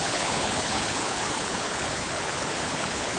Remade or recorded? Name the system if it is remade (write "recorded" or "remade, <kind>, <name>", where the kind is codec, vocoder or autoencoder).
remade, codec, HILCodec